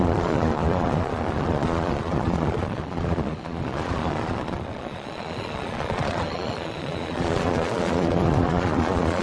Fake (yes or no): yes